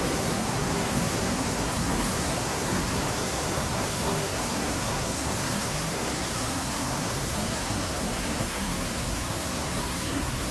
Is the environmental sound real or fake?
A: fake